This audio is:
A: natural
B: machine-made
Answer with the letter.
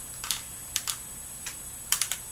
B